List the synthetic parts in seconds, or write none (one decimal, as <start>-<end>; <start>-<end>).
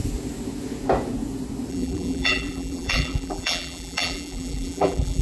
1.7-5.2